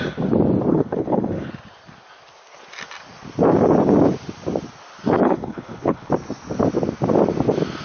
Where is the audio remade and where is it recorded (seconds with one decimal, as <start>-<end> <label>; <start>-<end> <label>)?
0.0-0.7 recorded; 0.7-1.5 remade; 1.5-5.2 recorded; 5.2-6.1 remade; 6.1-7.8 recorded